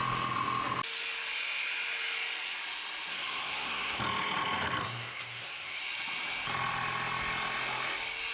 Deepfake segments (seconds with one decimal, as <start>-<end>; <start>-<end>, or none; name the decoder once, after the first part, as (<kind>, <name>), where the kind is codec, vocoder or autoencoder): 3.1-4.0 (codec, SNAC); 4.8-5.8